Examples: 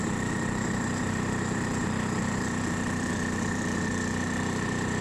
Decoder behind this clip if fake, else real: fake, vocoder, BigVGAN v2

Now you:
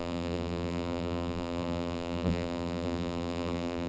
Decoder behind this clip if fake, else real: fake, vocoder, BigVGAN v2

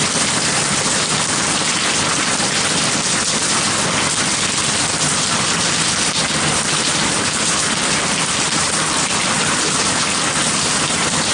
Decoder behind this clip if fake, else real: real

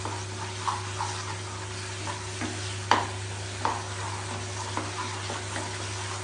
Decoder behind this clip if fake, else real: real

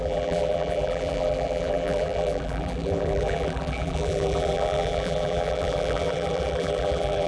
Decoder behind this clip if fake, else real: fake, vocoder, BigVGAN v2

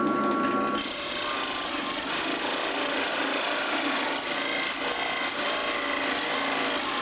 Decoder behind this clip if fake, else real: real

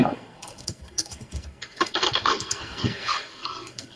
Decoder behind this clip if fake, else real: fake, codec, SNAC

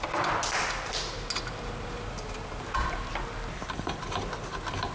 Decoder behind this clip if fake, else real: real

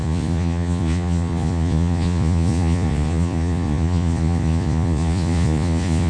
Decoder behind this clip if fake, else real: fake, vocoder, Vocos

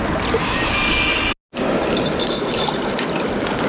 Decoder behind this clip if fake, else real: real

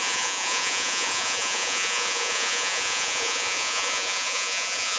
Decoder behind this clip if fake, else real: fake, vocoder, Vocos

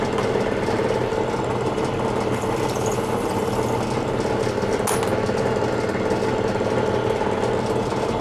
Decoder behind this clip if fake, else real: real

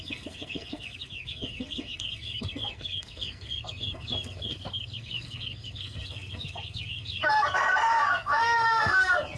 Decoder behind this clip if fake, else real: fake, codec, SNAC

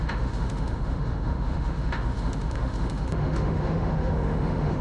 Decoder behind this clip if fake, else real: fake, autoencoder, DAC-VAE